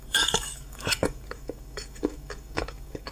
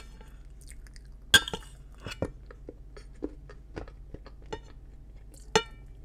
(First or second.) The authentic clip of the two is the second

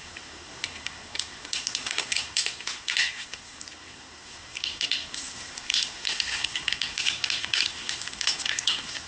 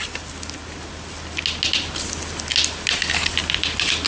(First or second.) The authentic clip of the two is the second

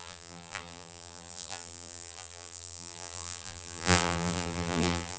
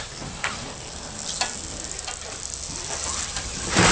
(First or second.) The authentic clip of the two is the second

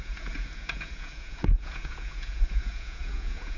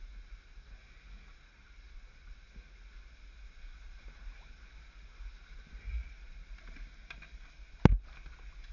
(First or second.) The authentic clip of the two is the second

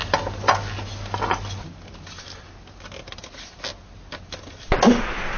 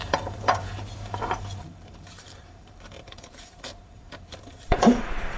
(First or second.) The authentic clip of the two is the first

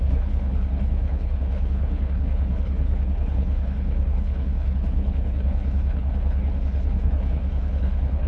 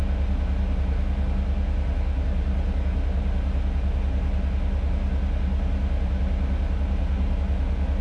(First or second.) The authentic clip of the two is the second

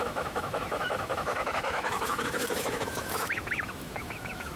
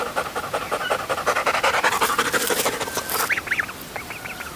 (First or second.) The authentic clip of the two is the second